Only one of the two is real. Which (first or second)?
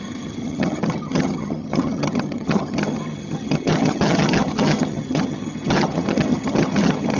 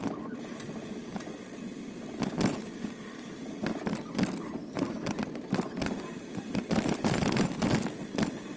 second